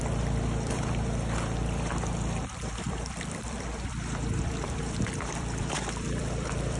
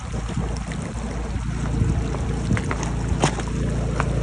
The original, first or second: second